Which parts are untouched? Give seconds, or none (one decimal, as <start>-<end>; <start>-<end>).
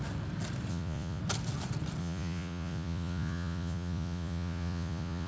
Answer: 0.0-0.7; 1.2-2.0